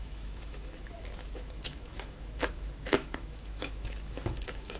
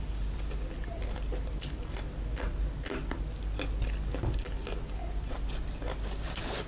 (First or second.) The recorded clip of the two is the second